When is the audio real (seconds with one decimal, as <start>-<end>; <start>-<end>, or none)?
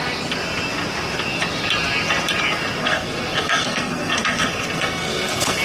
0.0-2.8